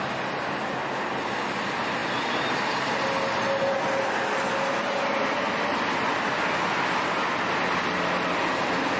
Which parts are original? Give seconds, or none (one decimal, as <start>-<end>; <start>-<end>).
0.0-9.0